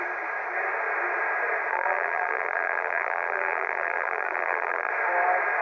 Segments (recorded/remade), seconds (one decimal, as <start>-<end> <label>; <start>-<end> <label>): 0.0-1.7 recorded; 1.7-4.9 remade; 4.9-5.6 recorded